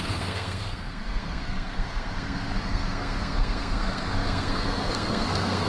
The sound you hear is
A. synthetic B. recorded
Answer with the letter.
A